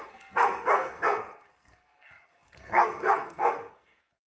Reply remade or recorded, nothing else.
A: remade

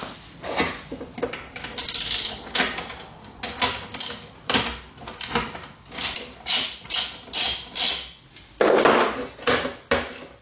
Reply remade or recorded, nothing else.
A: recorded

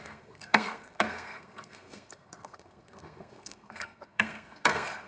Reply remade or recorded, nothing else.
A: remade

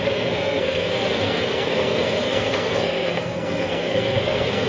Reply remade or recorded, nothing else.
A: remade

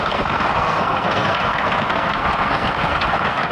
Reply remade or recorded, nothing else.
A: remade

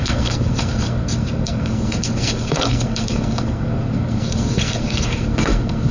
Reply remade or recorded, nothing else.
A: remade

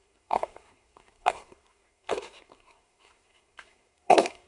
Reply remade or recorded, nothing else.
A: remade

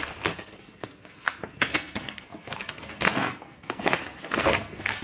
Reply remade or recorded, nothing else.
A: remade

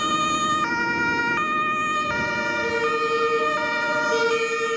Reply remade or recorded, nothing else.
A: recorded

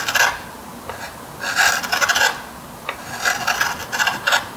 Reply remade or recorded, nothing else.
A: recorded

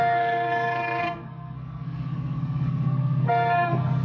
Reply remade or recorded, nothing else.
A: remade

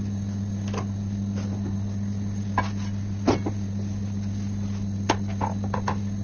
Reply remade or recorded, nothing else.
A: recorded